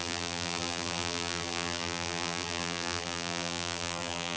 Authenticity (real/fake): fake